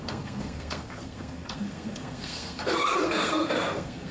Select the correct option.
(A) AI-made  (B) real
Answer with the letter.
A